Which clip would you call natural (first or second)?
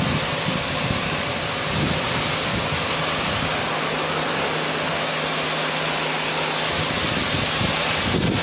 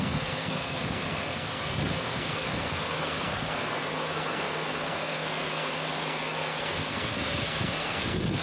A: first